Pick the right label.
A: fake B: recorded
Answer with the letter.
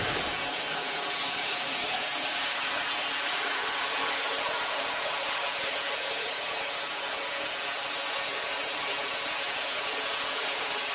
B